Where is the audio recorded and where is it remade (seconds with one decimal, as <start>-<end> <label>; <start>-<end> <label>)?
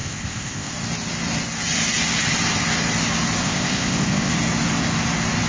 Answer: 0.0-0.7 remade; 0.7-3.4 recorded; 3.4-4.3 remade; 4.3-5.5 recorded